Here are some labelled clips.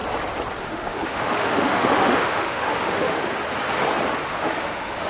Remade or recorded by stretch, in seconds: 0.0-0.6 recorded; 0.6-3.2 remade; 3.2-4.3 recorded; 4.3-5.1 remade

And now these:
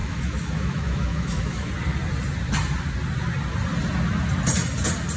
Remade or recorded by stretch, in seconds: 0.0-1.7 remade; 1.7-5.2 recorded

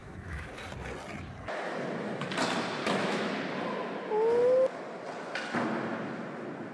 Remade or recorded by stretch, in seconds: 0.0-0.5 remade; 0.5-2.8 recorded; 2.8-3.3 remade; 3.3-6.7 recorded

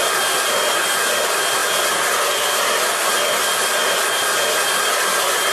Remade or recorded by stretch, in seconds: 0.0-5.5 recorded